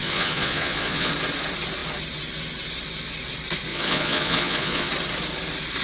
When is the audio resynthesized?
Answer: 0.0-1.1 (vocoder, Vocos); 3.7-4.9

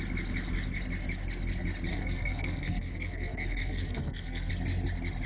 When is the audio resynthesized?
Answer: 1.9-4.5 (codec, SNAC)